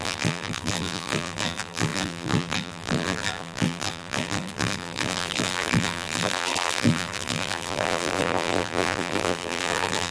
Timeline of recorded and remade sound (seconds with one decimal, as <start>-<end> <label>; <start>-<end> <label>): 0.0-10.1 remade